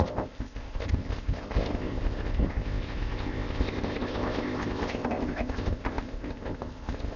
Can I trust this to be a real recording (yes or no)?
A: no